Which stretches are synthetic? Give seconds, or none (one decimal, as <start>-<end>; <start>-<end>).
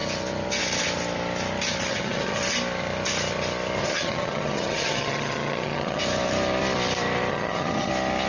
1.9-2.4; 3.8-6.0; 7.3-7.9